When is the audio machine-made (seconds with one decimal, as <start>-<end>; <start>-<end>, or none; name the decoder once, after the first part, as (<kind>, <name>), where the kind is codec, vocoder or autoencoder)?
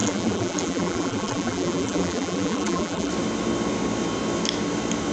0.0-3.1 (vocoder, BigVGAN v2)